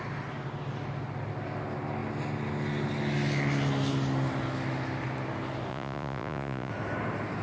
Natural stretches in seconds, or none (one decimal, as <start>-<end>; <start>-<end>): 0.0-5.7; 6.7-7.4